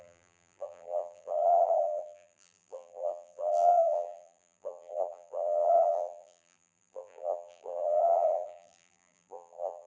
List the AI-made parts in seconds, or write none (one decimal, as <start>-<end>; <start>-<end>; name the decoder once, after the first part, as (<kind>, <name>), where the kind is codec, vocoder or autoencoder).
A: 0.0-9.9 (vocoder, BigVGAN v2)